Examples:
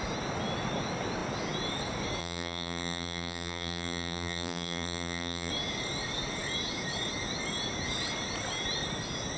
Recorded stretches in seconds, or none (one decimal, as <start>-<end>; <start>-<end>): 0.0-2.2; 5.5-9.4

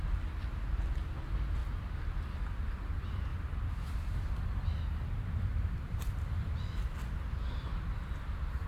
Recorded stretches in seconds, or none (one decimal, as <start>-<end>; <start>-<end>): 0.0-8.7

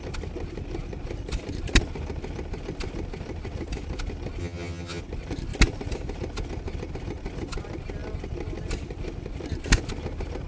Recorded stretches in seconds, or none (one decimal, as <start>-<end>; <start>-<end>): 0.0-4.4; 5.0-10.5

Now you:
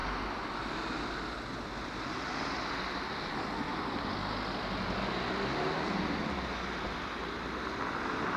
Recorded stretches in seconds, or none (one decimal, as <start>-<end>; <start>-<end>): 0.0-8.4

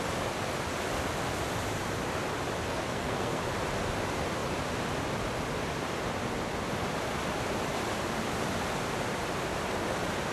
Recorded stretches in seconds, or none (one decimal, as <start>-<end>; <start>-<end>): 0.0-2.7; 3.4-10.3